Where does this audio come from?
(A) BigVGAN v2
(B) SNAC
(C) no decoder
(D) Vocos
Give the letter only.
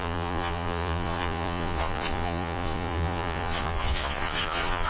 D